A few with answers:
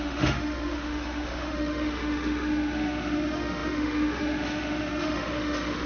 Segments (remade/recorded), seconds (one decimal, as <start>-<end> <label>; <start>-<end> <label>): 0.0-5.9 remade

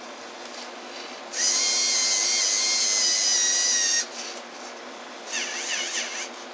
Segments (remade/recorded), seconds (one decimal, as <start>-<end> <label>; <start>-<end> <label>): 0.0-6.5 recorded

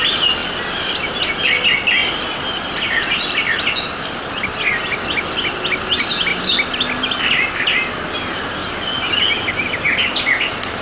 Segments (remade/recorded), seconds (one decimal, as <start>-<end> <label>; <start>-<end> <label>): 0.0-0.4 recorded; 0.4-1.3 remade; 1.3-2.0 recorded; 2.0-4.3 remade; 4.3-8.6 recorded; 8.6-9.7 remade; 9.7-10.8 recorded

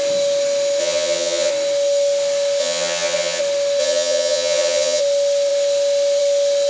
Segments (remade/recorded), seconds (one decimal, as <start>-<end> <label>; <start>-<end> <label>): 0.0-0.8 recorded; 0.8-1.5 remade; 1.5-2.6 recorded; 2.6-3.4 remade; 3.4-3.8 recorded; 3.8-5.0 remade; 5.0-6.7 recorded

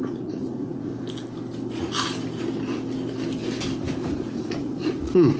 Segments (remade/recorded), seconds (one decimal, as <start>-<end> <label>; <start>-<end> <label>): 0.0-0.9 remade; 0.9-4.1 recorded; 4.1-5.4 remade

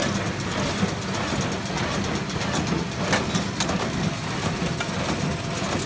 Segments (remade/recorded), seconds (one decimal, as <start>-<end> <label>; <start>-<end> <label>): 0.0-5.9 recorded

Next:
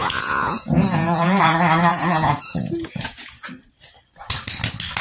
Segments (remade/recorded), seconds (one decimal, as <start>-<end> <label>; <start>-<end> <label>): 0.0-1.4 remade; 1.4-1.9 recorded; 1.9-3.3 remade; 3.3-5.0 recorded

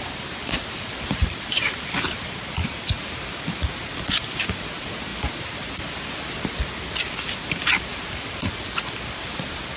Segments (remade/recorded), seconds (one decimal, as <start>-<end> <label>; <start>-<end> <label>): 0.0-5.1 remade; 5.1-7.0 recorded; 7.0-7.9 remade; 7.9-9.8 recorded